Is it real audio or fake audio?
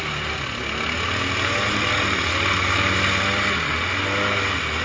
real